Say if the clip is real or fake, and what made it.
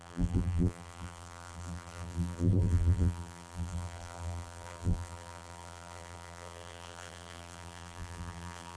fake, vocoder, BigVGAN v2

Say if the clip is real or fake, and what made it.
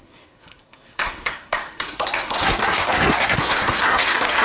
fake, codec, SNAC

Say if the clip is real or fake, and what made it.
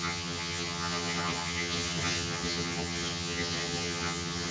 fake, vocoder, HiFi-GAN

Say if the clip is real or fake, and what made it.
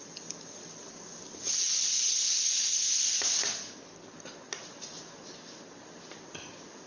real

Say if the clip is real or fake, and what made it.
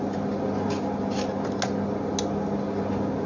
real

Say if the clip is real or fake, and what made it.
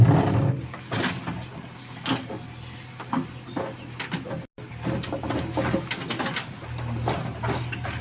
real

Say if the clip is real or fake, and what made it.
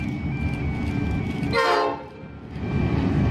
real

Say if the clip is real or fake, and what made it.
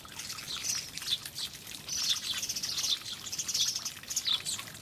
real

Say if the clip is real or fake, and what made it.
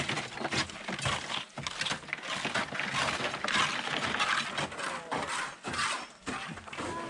real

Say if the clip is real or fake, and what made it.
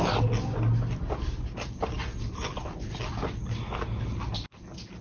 real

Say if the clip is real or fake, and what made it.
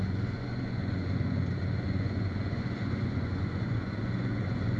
fake, vocoder, Vocos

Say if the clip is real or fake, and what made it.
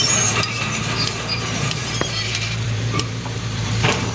fake, vocoder, BigVGAN v2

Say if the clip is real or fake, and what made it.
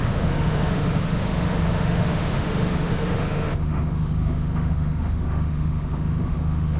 fake, autoencoder, DAC-VAE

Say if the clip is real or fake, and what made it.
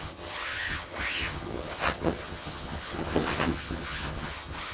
fake, vocoder, HiFi-GAN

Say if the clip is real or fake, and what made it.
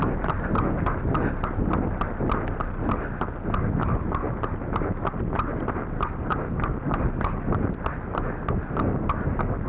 real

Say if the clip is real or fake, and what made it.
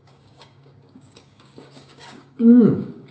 fake, codec, DAC